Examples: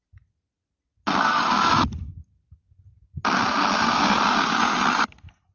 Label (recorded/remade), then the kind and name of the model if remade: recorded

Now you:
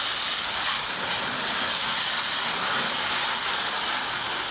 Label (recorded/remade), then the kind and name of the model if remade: recorded